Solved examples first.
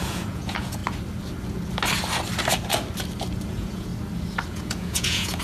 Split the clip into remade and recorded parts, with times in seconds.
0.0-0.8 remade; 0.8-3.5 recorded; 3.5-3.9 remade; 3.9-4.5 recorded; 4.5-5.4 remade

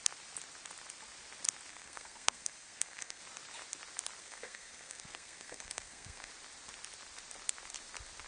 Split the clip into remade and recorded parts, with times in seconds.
0.0-1.7 recorded; 1.7-3.2 remade; 3.2-4.2 recorded; 4.2-6.3 remade; 6.3-8.3 recorded